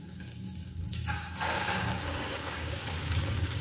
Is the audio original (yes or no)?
no